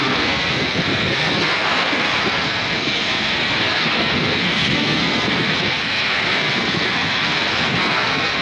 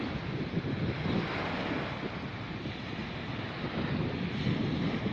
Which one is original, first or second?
second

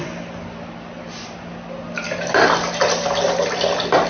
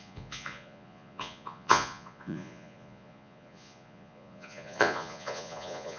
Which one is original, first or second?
first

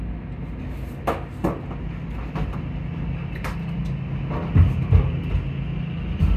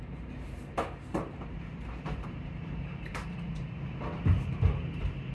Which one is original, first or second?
first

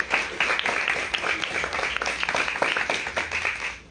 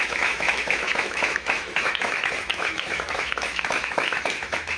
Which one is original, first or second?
first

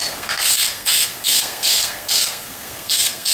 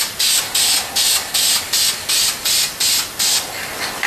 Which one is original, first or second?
second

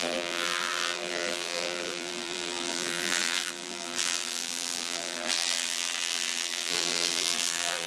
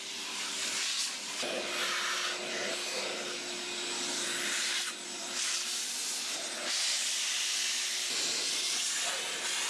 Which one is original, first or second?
second